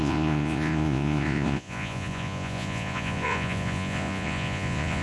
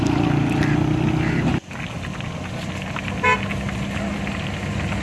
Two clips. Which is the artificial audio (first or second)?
first